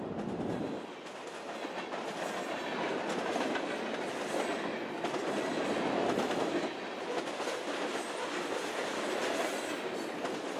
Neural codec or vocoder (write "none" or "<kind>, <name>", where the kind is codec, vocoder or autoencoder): none